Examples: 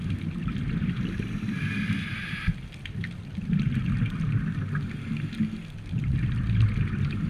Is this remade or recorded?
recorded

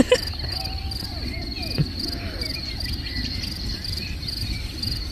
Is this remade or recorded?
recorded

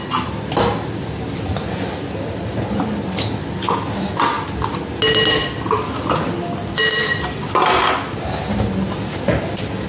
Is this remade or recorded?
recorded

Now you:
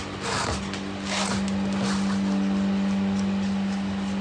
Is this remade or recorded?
recorded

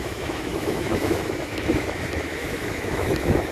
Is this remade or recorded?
remade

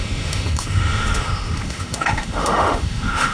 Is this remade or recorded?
remade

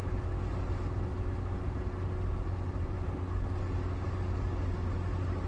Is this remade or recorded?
recorded